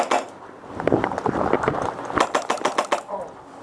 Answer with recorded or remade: recorded